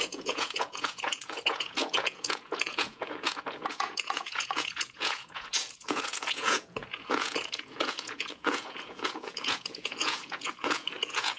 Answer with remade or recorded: remade